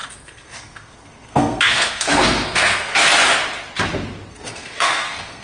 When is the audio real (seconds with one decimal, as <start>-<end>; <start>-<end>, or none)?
2.9-4.3